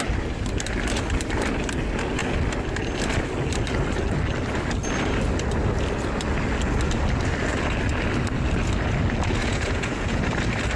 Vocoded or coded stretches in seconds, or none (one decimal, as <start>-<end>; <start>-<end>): 9.4-10.2

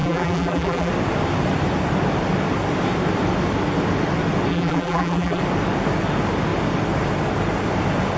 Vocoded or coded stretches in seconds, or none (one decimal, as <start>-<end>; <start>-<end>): 0.0-0.9; 4.5-5.4